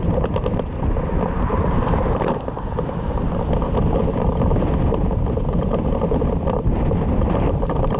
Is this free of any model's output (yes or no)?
yes